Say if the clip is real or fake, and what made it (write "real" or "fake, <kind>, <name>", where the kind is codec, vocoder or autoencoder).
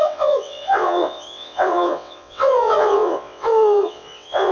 fake, vocoder, WaveNeXt